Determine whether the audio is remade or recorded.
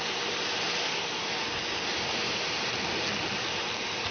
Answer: recorded